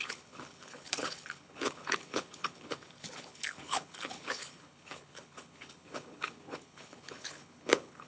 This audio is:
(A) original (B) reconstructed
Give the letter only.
B